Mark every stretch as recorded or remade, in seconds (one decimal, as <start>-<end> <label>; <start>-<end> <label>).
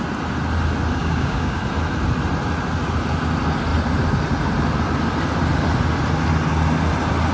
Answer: 0.0-1.0 recorded; 1.0-1.6 remade; 1.6-7.3 recorded